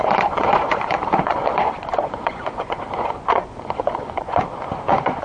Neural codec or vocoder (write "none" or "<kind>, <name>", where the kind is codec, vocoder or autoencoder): vocoder, Vocos